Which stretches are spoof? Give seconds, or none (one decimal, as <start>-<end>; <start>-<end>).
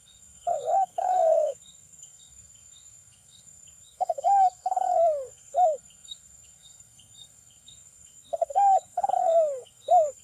0.0-10.2